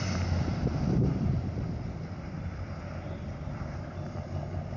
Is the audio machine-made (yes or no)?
no